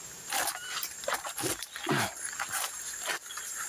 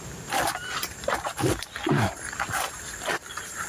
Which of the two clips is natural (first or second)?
first